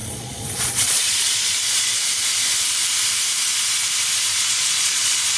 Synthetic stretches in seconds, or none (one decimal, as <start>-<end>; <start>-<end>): 0.0-1.9; 4.3-5.4